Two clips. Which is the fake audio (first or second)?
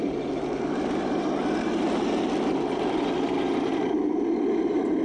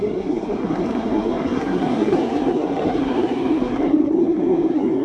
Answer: second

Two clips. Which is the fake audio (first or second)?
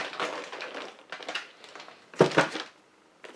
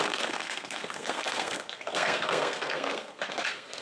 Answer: second